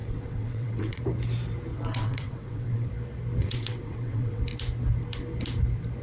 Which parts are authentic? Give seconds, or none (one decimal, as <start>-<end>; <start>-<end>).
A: 1.0-1.7; 2.9-3.4; 4.4-6.0